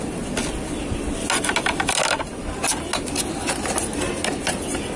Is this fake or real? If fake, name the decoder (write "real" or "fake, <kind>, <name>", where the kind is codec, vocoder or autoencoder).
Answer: real